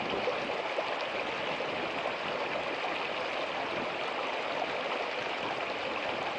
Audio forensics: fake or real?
real